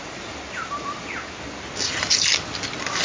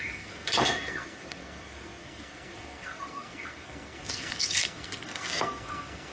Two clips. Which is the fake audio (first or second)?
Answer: second